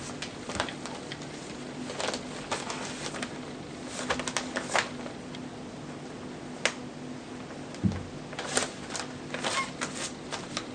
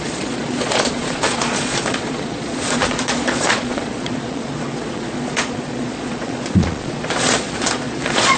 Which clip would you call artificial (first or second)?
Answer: second